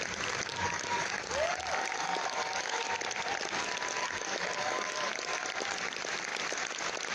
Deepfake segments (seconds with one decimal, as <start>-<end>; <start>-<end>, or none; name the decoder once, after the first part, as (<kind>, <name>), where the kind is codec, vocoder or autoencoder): 0.5-2.9 (codec, DAC); 4.0-5.1